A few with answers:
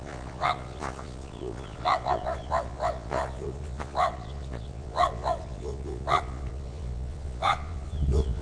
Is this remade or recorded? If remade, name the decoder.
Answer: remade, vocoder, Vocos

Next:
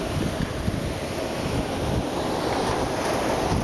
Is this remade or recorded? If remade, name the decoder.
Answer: recorded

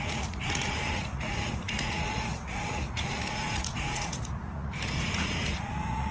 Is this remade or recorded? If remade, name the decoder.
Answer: remade, vocoder, Vocos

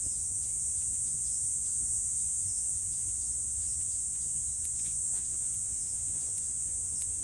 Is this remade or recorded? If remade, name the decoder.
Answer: remade, vocoder, Vocos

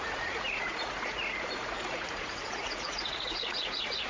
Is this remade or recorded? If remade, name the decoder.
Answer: remade, vocoder, Vocos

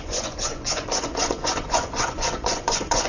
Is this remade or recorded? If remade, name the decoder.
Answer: remade, vocoder, Vocos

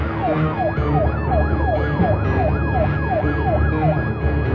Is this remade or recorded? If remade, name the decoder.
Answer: recorded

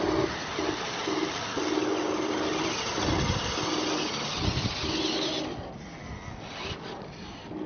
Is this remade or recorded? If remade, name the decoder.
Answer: recorded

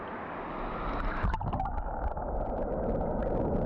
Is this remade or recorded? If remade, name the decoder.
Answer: recorded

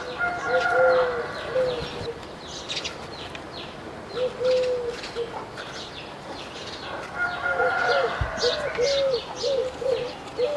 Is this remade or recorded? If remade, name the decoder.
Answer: recorded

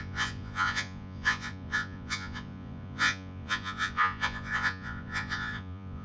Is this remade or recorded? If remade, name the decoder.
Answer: remade, vocoder, Vocos